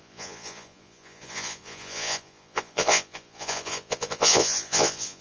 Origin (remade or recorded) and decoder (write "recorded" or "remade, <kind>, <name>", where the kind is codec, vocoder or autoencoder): remade, vocoder, Vocos